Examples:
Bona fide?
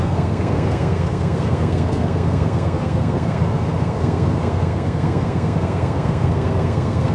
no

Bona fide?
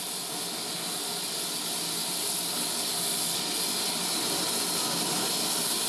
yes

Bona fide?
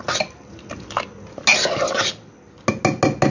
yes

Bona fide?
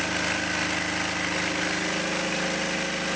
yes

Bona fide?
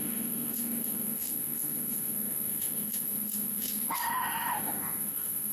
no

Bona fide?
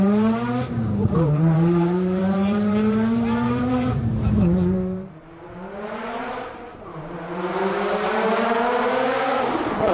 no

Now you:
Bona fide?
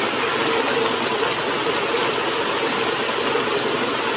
yes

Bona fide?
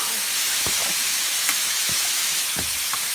no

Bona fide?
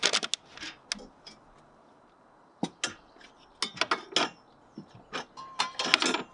yes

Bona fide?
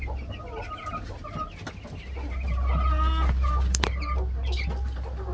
yes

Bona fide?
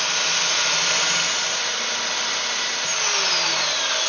yes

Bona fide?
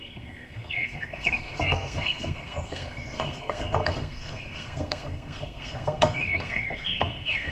no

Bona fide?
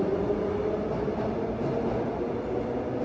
yes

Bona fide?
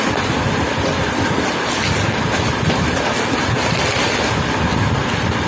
yes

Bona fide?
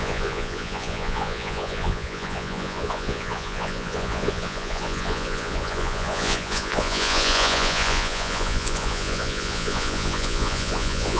no